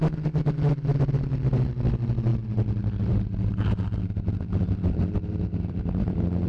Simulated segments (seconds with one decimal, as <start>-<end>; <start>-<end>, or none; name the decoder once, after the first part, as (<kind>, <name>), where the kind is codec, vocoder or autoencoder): 2.3-5.7 (vocoder, BigVGAN v2)